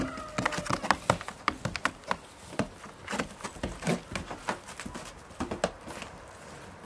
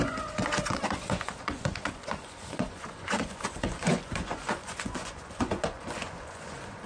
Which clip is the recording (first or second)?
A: first